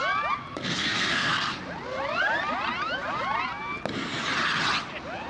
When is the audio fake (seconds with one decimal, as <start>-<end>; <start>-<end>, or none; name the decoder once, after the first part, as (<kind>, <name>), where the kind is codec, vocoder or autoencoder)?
0.5-1.6 (codec, SNAC)